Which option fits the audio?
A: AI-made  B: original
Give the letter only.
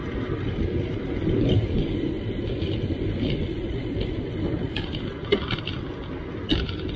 B